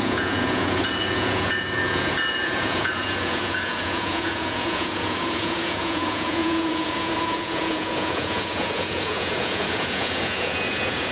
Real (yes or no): no